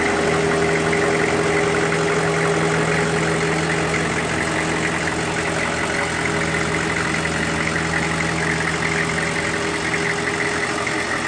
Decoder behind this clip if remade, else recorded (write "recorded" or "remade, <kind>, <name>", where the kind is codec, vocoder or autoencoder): recorded